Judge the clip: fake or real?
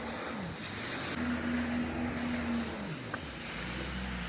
real